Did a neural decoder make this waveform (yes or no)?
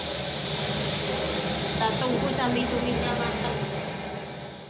no